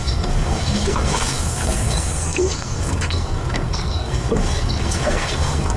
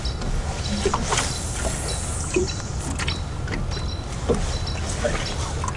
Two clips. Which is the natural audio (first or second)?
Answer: second